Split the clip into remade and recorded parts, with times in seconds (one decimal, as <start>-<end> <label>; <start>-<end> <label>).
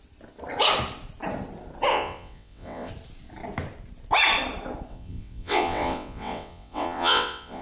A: 0.0-1.9 recorded; 1.9-2.9 remade; 2.9-4.9 recorded; 4.9-7.6 remade